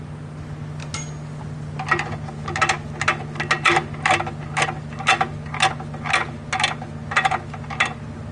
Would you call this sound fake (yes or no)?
no